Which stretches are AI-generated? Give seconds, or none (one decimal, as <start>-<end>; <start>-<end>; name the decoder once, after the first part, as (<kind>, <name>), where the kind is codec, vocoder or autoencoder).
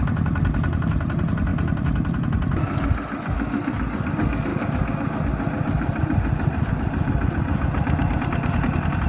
none